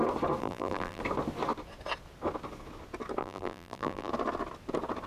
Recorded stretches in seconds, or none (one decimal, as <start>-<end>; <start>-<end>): 0.0-0.4; 1.0-3.2; 4.1-5.1